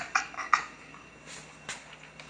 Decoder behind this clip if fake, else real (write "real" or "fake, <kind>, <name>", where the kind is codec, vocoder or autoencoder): real